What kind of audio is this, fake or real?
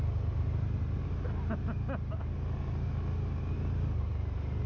real